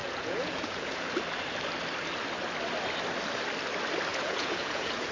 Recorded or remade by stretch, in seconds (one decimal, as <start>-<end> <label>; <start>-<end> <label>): 0.0-1.1 remade; 1.1-4.1 recorded; 4.1-5.1 remade